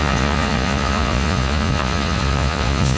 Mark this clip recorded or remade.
remade